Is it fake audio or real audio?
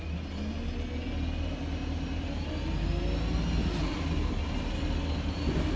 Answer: real